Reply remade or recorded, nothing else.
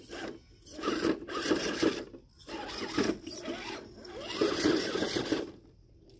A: recorded